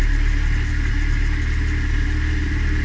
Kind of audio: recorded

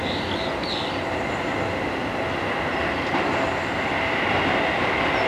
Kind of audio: recorded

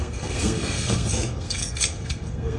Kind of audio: remade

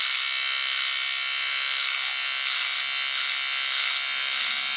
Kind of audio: recorded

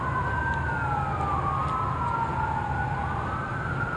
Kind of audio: recorded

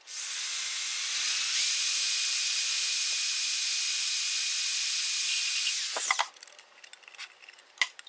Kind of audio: recorded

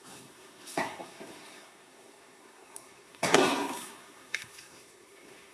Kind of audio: remade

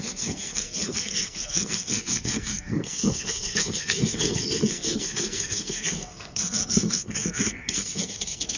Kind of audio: remade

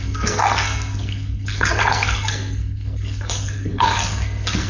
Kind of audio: remade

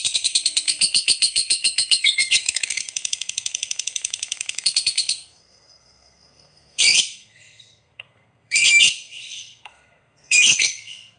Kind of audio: remade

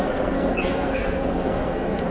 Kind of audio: remade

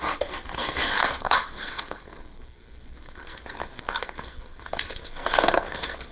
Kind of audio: remade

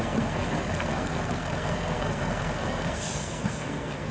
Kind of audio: remade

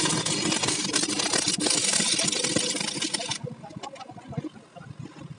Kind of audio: recorded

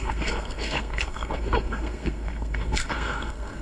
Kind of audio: remade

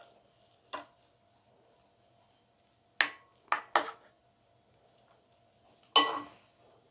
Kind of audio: recorded